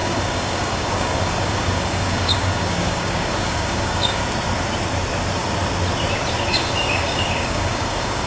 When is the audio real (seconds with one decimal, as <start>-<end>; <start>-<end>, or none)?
4.2-6.4